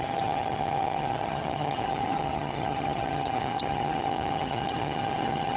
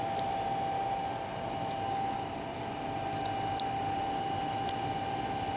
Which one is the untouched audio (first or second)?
second